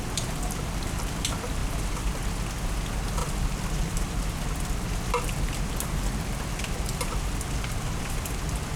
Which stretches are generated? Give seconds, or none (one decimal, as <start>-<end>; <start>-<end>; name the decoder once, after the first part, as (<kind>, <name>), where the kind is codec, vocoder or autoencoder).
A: none